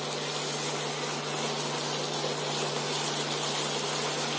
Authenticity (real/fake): real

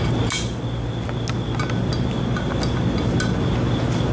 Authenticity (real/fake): real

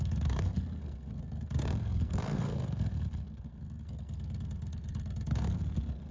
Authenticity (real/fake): fake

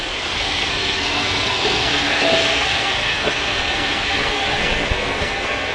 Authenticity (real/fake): fake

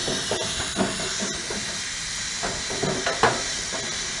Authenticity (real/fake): real